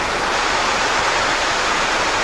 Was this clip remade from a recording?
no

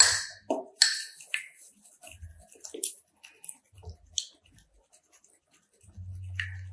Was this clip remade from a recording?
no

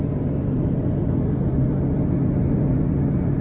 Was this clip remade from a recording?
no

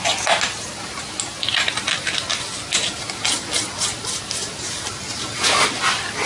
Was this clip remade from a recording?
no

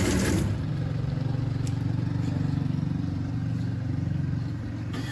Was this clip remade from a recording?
no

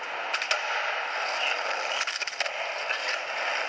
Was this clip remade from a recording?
no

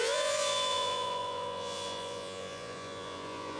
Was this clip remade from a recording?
yes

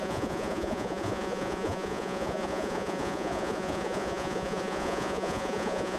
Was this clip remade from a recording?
yes